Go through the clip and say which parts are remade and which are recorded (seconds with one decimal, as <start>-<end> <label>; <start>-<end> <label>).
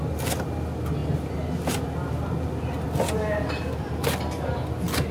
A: 0.0-5.1 recorded